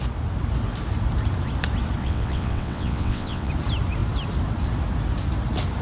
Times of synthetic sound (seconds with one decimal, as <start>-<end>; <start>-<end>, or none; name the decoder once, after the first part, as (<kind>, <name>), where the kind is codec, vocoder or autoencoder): 2.0-3.5 (vocoder, WaveNeXt)